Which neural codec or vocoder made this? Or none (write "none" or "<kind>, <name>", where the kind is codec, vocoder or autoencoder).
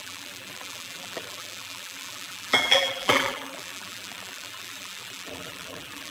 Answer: vocoder, BigVGAN v2